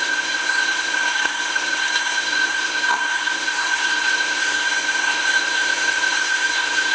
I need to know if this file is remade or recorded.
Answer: remade